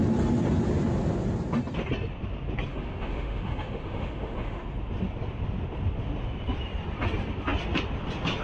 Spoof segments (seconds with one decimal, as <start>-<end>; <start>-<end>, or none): 2.7-4.6